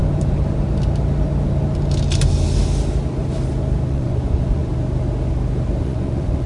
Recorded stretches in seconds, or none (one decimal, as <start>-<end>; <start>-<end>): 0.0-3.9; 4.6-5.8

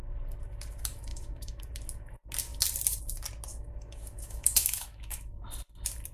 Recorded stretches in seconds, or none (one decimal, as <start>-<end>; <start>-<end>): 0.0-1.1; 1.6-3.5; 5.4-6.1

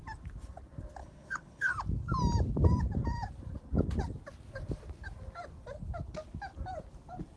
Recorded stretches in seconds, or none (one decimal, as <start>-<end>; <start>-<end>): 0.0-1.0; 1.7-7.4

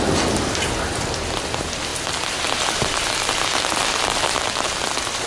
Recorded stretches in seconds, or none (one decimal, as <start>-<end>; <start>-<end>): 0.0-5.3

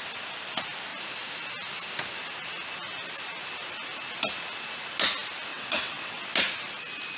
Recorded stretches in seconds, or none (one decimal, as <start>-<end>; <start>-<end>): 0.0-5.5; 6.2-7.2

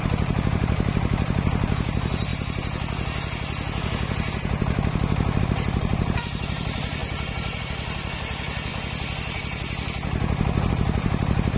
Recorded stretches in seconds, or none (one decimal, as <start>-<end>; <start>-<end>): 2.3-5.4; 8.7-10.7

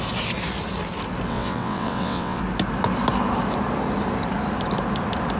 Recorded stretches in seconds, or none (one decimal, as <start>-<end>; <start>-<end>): 0.0-1.3; 2.4-5.4